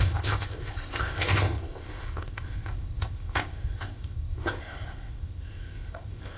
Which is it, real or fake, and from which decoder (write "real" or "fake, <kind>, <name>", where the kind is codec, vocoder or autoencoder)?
fake, codec, ZipCodec